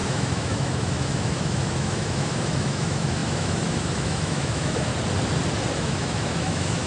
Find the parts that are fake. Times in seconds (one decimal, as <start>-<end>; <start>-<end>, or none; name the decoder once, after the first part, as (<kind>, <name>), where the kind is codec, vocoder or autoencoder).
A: 0.0-4.9 (autoencoder, DAC-VAE); 5.8-6.9